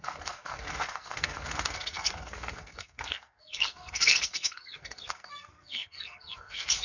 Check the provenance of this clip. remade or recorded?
remade